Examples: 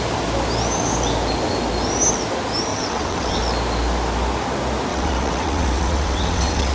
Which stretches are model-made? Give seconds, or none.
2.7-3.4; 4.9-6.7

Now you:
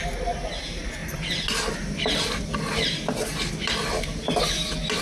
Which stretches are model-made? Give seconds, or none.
none